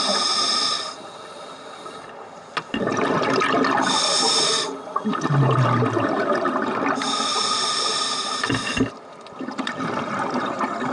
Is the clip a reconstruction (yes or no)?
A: no